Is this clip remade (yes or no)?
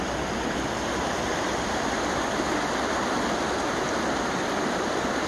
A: no